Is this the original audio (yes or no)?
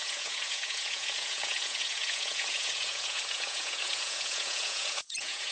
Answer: no